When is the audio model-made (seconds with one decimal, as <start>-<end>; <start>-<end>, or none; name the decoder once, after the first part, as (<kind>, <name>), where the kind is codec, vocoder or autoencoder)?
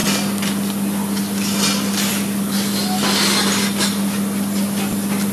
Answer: none